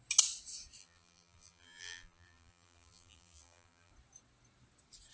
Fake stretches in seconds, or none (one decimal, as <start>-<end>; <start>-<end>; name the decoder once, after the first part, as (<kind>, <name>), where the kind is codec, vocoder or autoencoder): 0.8-3.9 (vocoder, BigVGAN v2)